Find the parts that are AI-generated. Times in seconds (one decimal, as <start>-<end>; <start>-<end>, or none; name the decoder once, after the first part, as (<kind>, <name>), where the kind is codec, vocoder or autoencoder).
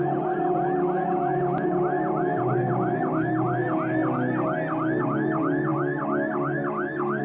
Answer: none